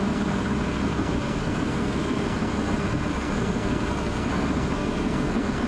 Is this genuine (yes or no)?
no